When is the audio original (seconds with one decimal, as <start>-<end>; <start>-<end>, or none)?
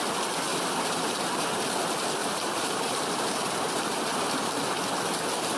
0.0-0.5; 1.6-2.2; 4.5-5.6